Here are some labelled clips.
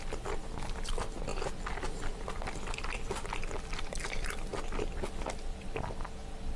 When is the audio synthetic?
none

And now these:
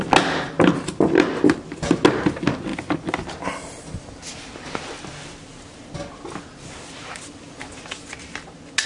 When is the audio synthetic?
none